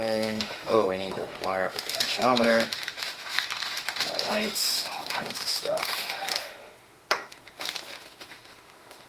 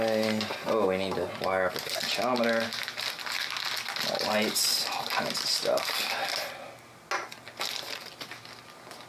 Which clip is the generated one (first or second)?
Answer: first